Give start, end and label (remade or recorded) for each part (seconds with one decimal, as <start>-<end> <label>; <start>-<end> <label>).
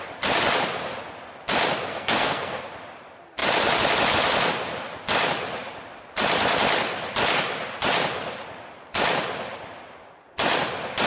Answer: 0.0-1.9 recorded; 1.9-2.6 remade; 2.6-11.1 recorded